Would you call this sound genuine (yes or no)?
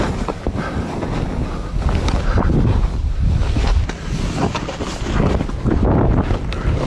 yes